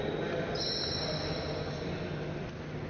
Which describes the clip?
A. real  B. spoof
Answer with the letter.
A